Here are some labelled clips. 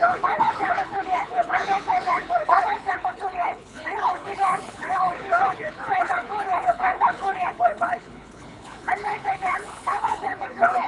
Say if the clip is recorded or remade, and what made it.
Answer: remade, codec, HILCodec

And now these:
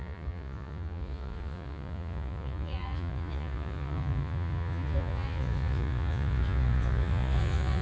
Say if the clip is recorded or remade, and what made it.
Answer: remade, vocoder, Vocos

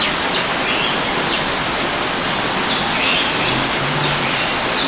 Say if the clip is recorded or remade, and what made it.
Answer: recorded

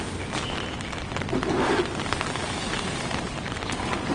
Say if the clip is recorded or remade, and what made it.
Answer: recorded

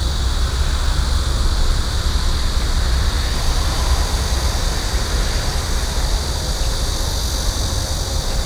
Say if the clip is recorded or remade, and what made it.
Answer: recorded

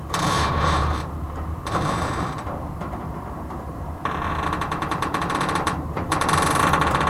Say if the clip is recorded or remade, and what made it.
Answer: remade, vocoder, BigVGAN v2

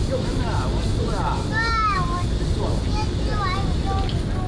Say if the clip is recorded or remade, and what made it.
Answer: recorded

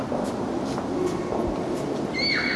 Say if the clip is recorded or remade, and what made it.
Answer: recorded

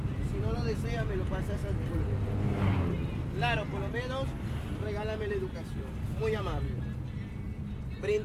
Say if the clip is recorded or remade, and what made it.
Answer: recorded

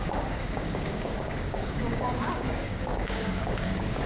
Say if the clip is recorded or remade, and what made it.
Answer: remade, codec, DAC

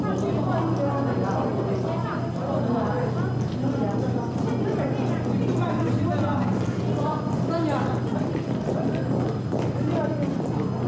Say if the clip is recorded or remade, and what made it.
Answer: recorded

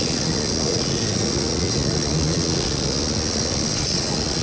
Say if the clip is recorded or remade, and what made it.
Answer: remade, vocoder, Vocos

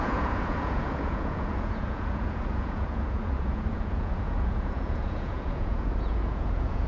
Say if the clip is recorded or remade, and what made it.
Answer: remade, vocoder, Vocos